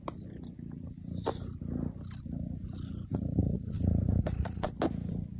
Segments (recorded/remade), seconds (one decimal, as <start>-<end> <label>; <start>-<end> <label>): 0.0-3.1 recorded; 3.1-4.7 remade; 4.7-5.4 recorded